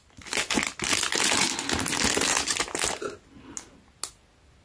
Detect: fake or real real